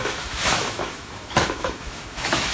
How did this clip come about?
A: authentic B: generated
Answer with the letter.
B